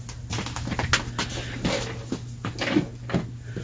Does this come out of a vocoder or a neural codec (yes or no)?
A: no